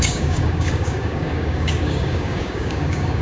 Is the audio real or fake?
fake